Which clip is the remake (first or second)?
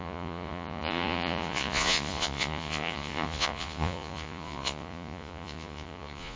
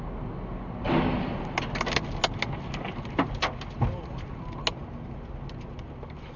first